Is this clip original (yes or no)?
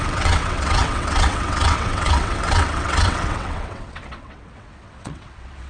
no